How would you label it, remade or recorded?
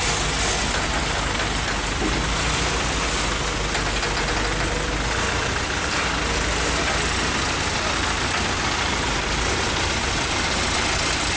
recorded